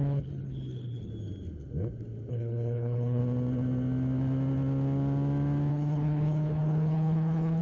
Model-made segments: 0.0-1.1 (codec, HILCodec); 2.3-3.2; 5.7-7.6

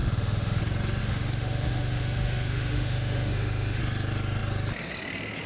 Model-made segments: 0.0-0.6 (autoencoder, DAC-VAE); 1.0-3.8

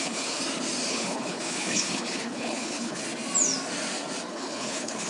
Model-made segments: 0.0-0.4 (codec, HILCodec); 0.9-3.0; 4.3-5.1

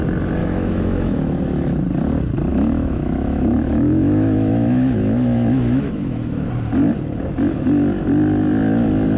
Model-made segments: 0.4-1.4 (autoencoder, DAC-VAE); 2.5-6.5

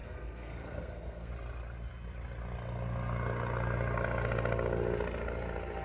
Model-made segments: 0.0-1.3 (codec, SNAC)